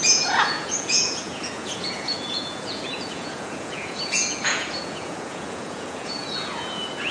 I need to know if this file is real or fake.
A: fake